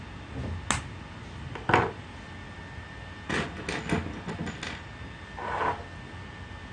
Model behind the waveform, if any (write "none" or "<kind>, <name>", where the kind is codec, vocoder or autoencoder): none